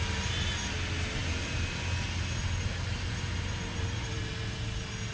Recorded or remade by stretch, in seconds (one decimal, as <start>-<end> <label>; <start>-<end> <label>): 0.0-5.1 recorded